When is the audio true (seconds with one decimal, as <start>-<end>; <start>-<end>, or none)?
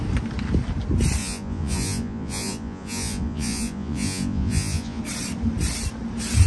0.0-1.2; 5.0-6.5